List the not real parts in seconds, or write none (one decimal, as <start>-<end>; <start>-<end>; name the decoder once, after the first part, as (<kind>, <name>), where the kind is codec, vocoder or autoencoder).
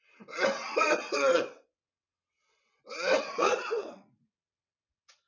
0.0-5.3 (vocoder, WaveNeXt)